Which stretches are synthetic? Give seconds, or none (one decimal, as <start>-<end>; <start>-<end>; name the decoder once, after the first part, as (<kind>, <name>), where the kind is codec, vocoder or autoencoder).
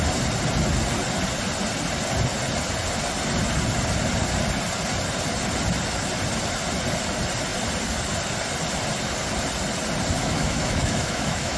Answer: 10.2-11.6 (autoencoder, DAC-VAE)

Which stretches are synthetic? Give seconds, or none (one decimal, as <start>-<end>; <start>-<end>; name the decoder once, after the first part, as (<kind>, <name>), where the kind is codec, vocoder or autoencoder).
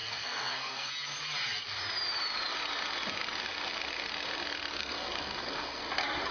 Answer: 0.0-0.9 (codec, SNAC); 4.8-5.8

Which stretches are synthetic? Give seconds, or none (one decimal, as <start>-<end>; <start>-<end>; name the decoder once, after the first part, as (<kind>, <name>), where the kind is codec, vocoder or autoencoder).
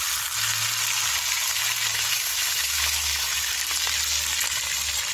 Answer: 1.9-3.5 (autoencoder, DAC-VAE)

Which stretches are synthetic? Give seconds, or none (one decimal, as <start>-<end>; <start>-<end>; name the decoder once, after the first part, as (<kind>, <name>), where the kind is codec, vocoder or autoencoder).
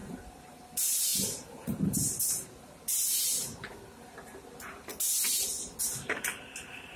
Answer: 0.0-0.6 (vocoder, BigVGAN v2); 1.1-1.8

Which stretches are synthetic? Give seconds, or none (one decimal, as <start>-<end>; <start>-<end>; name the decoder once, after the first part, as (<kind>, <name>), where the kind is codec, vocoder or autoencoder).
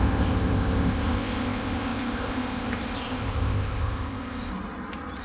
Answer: 0.0-4.5 (codec, ZipCodec)